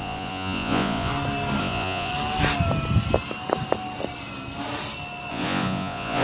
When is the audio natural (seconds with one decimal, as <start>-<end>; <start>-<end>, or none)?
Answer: 1.1-1.6; 2.1-5.3